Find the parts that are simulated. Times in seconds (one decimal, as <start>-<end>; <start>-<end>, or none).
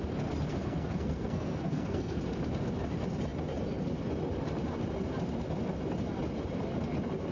0.5-2.2